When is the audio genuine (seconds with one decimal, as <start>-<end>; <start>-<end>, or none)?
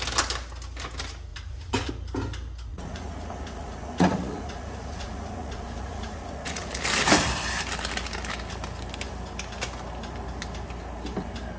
0.0-1.3; 1.9-2.7; 6.7-11.6